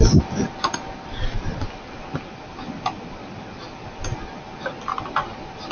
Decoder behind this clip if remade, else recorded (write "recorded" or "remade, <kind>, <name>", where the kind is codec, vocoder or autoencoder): recorded